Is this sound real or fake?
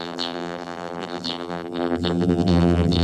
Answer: fake